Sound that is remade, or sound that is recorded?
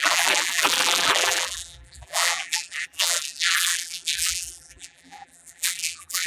remade